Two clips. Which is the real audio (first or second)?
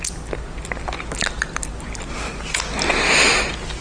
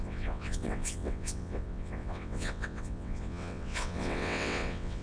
first